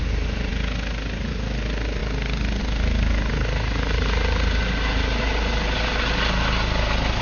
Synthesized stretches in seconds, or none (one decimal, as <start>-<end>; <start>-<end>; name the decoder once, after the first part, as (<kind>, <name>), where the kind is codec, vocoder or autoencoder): none